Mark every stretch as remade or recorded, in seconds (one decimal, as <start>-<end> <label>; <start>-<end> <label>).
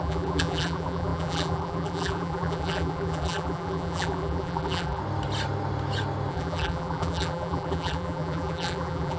0.0-5.0 remade; 5.0-6.3 recorded; 6.3-9.2 remade